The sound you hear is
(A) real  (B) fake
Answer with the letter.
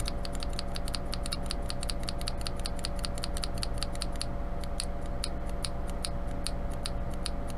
A